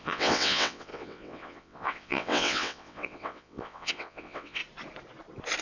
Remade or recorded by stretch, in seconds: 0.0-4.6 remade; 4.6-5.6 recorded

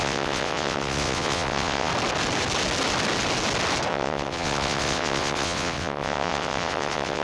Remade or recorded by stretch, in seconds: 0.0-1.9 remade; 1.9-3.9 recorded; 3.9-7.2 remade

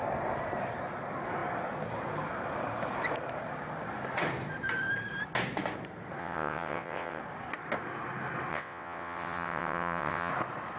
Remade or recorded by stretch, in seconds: 0.0-6.2 recorded; 6.2-7.2 remade; 7.2-8.5 recorded; 8.5-10.3 remade; 10.3-10.8 recorded

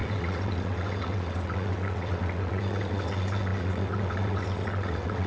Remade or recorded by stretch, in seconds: 0.0-5.3 remade